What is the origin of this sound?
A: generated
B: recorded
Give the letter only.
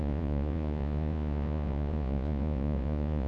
A